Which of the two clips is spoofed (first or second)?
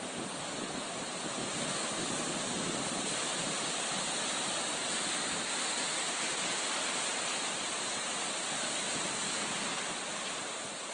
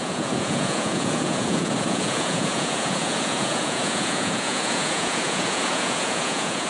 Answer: second